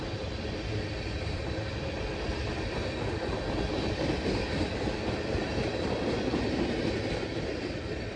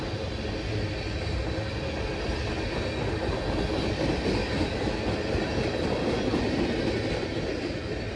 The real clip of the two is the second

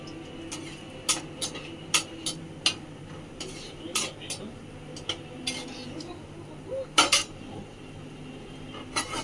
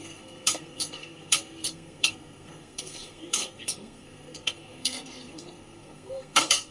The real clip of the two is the first